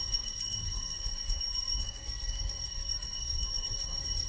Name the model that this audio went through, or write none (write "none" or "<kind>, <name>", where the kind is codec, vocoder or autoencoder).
codec, SNAC